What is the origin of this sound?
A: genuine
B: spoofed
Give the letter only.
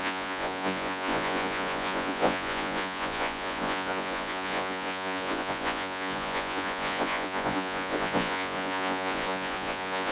B